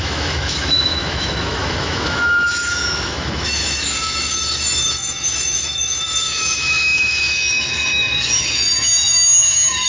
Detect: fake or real fake